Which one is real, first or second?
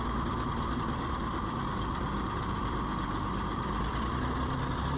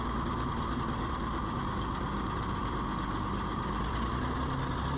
second